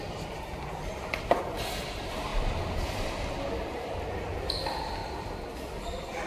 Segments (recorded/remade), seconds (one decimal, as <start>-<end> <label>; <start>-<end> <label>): 0.0-6.3 recorded